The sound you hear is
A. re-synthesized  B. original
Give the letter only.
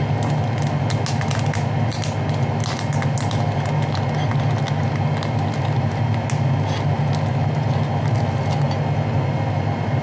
B